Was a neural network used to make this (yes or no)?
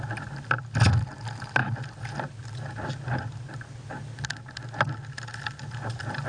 no